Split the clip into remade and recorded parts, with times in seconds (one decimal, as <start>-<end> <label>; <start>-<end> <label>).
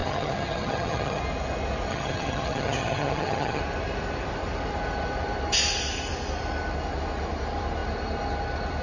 0.0-1.2 remade; 1.2-1.9 recorded; 1.9-3.6 remade; 3.6-8.8 recorded